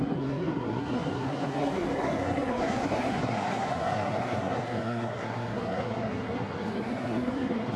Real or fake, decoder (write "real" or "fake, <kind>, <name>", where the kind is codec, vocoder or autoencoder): fake, codec, SNAC